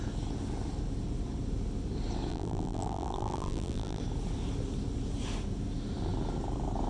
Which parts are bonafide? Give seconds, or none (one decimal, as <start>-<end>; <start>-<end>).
0.0-2.3; 4.0-6.9